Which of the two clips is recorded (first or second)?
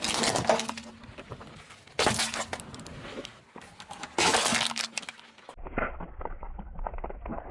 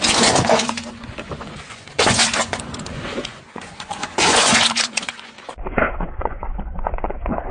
first